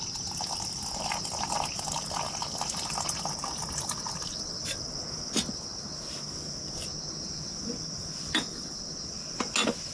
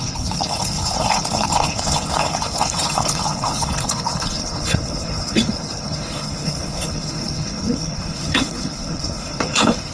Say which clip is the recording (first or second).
first